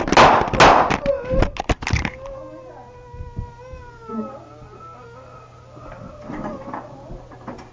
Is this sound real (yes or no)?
yes